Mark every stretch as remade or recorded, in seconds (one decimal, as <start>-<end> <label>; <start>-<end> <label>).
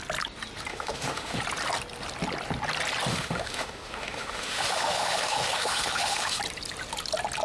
0.0-0.7 recorded; 0.7-1.4 remade; 1.4-3.1 recorded; 3.1-6.4 remade; 6.4-7.4 recorded